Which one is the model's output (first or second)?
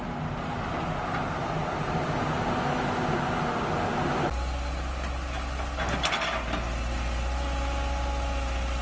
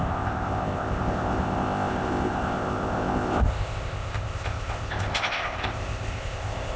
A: second